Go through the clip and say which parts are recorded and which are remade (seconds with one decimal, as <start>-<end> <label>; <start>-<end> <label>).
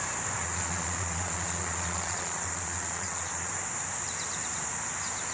0.0-0.4 recorded; 0.4-3.5 remade; 3.5-5.3 recorded